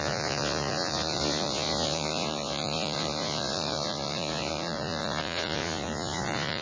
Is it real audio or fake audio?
fake